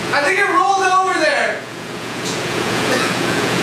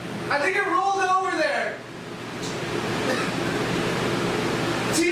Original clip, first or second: second